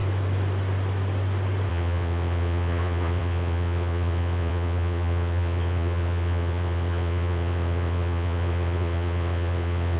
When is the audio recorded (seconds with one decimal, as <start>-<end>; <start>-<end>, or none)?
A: 0.0-1.7